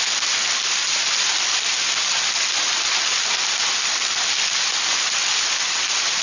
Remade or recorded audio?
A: recorded